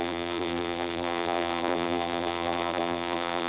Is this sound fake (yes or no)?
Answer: yes